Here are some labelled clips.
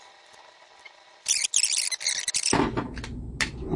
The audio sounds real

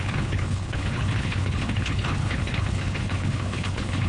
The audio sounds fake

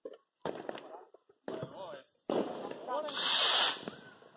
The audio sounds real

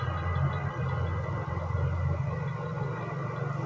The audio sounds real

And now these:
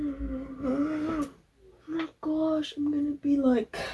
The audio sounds real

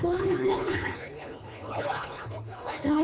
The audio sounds fake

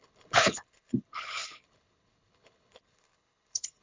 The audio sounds fake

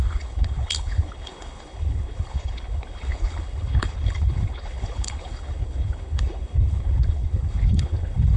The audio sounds fake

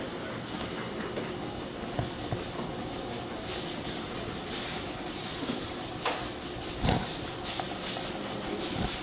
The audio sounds real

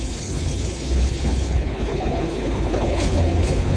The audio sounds fake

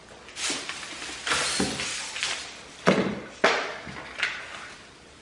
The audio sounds real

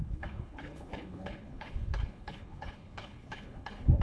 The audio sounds fake